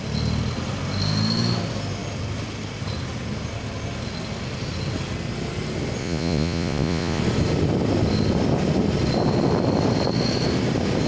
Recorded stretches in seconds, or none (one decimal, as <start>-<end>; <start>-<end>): 0.0-6.0; 7.2-11.1